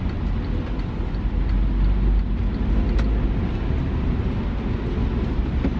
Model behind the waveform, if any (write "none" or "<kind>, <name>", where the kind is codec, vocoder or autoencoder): none